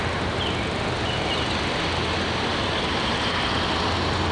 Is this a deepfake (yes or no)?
no